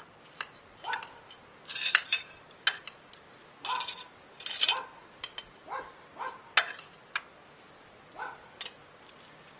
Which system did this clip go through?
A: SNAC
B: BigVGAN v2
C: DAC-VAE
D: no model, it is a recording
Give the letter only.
D